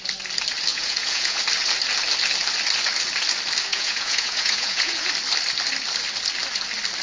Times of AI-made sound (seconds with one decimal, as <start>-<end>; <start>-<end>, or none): 0.7-1.4; 3.7-5.1

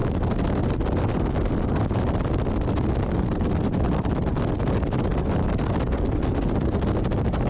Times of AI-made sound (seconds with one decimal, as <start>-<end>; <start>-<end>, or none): none

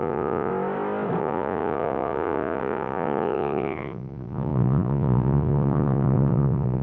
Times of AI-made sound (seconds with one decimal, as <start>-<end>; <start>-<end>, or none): 0.0-0.5; 1.2-6.8